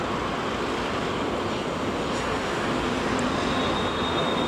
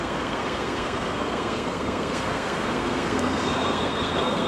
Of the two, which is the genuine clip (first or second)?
first